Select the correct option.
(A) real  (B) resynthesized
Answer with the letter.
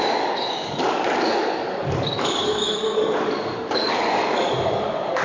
B